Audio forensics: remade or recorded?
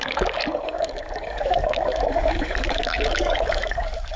remade